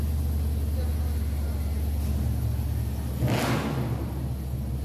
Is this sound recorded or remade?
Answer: recorded